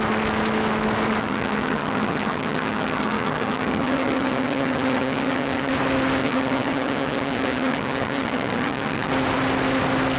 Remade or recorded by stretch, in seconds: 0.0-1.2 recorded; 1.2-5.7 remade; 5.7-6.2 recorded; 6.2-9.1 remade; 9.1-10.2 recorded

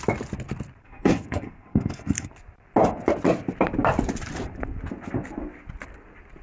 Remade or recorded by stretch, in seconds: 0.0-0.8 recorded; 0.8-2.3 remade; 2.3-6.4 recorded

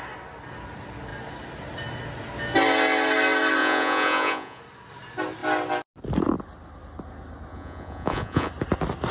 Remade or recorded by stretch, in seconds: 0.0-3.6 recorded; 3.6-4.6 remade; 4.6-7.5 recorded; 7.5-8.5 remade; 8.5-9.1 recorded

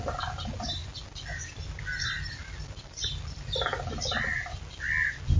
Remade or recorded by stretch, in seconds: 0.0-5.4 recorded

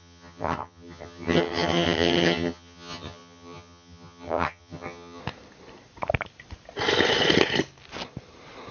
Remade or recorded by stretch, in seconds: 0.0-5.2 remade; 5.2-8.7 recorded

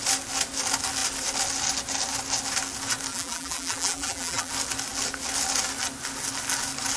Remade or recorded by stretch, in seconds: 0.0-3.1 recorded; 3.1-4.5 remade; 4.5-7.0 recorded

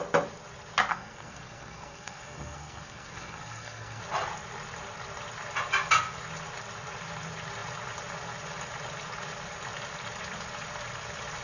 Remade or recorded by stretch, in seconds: 0.0-0.9 recorded; 0.9-4.0 remade; 4.0-11.4 recorded